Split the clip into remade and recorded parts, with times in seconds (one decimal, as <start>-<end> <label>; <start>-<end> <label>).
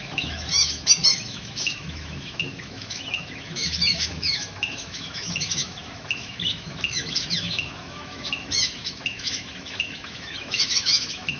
0.0-11.4 remade